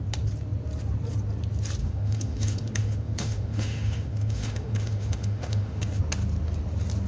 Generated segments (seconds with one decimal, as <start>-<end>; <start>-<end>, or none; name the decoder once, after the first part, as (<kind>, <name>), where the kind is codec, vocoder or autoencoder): 1.8-6.0 (autoencoder, DAC-VAE)